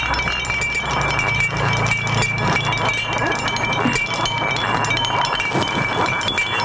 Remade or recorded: recorded